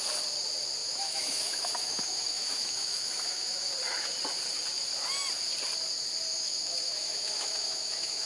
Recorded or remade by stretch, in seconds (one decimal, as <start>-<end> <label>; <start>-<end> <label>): 0.0-0.8 recorded; 0.8-3.7 remade; 3.7-6.3 recorded; 6.3-8.3 remade